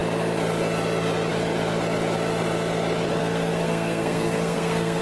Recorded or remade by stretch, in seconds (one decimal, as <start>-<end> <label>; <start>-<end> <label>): 0.0-3.2 recorded; 3.2-5.0 remade